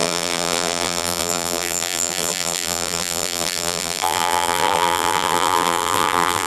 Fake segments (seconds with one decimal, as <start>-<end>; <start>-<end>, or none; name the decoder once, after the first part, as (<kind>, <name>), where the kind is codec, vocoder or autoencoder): 0.0-6.5 (vocoder, BigVGAN v2)